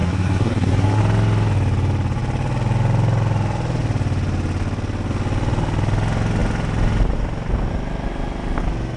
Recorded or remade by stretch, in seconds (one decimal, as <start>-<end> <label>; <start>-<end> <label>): 0.0-1.0 remade; 1.0-9.0 recorded